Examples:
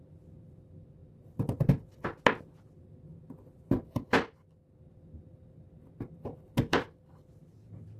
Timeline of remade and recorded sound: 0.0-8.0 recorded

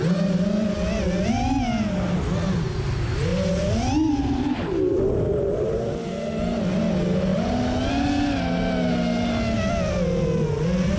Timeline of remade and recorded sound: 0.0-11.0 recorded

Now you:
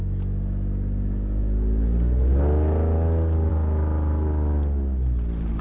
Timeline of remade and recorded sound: 0.0-5.6 recorded

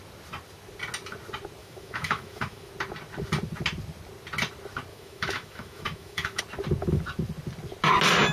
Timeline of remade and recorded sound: 0.0-1.6 recorded; 1.6-2.7 remade; 2.7-4.9 recorded; 4.9-6.4 remade; 6.4-8.3 recorded

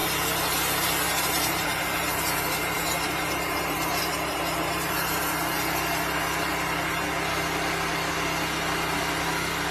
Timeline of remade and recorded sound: 0.0-5.2 remade; 5.2-9.7 recorded

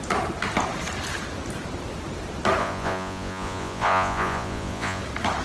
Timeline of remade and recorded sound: 0.0-2.6 recorded; 2.6-5.0 remade; 5.0-5.4 recorded

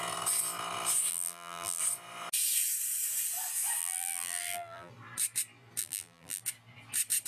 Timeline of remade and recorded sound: 0.0-1.1 recorded; 1.1-1.8 remade; 1.8-3.8 recorded; 3.8-4.9 remade; 4.9-5.8 recorded; 5.8-6.4 remade; 6.4-7.3 recorded